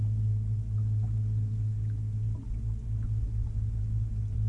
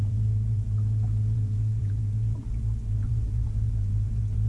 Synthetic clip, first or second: second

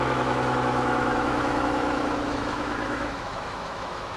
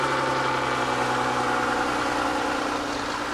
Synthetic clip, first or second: first